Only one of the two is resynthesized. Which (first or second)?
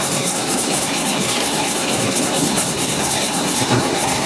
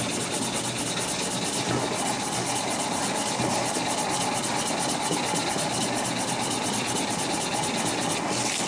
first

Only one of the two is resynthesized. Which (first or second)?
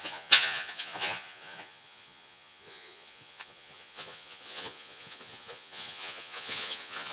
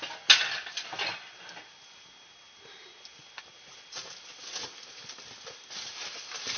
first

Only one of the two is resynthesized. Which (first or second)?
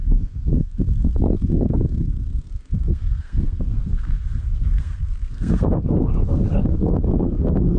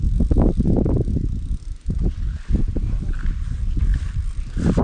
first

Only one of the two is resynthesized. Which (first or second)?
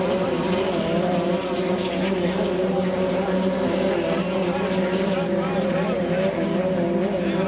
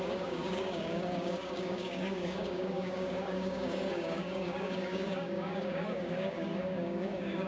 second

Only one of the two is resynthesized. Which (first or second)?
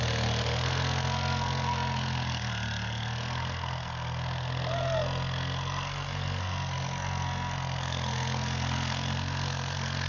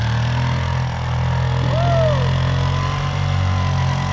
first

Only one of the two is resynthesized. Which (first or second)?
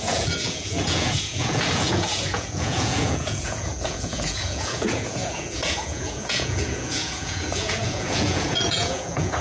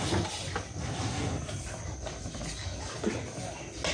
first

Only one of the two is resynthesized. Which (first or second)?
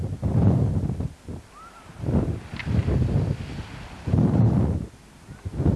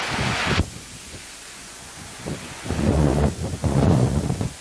second